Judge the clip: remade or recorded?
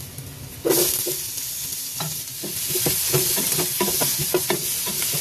recorded